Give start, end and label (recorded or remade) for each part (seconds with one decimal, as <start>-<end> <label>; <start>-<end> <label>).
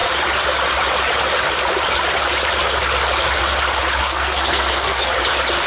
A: 0.0-4.0 recorded; 4.0-5.1 remade; 5.1-5.7 recorded